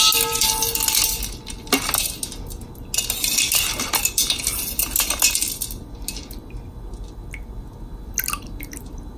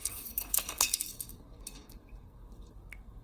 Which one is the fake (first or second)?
second